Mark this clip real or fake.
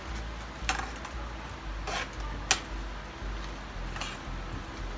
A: real